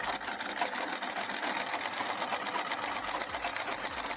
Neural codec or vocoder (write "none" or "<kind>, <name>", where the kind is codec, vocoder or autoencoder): none